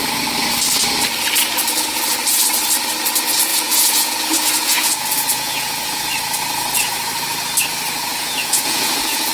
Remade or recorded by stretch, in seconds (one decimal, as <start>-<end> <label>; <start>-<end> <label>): 0.0-3.5 recorded; 3.5-6.0 remade; 6.0-8.1 recorded; 8.1-9.3 remade